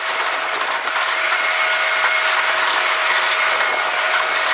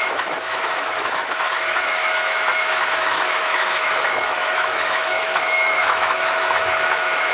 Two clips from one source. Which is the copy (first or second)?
second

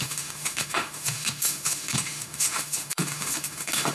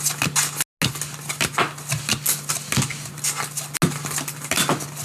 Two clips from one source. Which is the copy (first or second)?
first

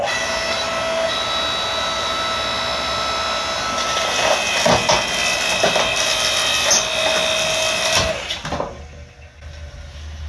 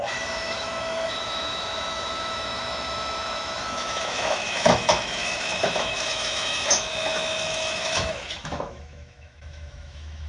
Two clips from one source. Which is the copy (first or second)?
second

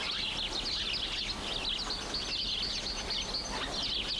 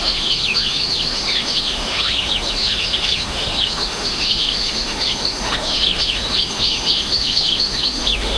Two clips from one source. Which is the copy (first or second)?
second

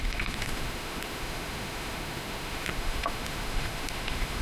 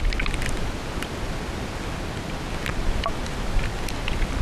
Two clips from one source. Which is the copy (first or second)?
first